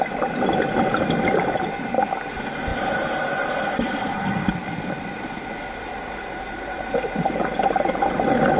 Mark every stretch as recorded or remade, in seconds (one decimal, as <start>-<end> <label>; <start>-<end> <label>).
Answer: 0.0-5.9 recorded; 5.9-8.0 remade; 8.0-8.6 recorded